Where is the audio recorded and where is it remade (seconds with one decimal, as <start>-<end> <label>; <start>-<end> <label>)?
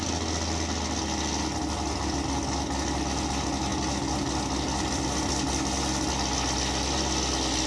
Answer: 0.0-7.7 recorded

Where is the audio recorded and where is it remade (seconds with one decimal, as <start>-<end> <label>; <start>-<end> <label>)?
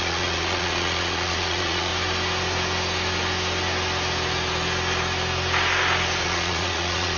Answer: 0.0-1.9 remade; 1.9-6.2 recorded; 6.2-7.2 remade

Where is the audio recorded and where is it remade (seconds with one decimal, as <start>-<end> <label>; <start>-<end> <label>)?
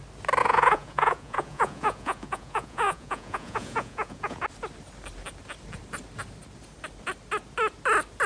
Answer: 0.0-0.4 recorded; 0.4-4.4 remade; 4.4-8.3 recorded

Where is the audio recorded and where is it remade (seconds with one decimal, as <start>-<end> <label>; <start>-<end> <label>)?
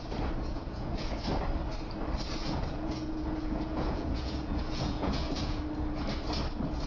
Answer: 0.0-0.5 recorded; 0.5-1.2 remade; 1.2-2.4 recorded; 2.4-5.6 remade; 5.6-6.9 recorded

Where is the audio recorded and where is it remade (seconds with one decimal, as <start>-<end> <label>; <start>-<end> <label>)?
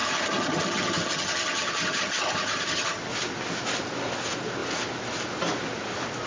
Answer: 0.0-3.0 remade; 3.0-6.3 recorded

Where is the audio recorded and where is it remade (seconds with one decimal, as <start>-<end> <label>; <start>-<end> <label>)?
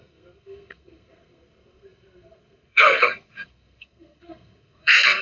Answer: 0.0-5.2 remade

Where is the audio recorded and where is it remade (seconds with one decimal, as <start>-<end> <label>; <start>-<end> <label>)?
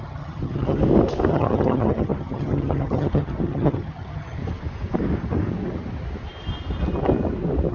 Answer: 0.0-0.8 remade; 0.8-1.3 recorded; 1.3-4.4 remade; 4.4-7.7 recorded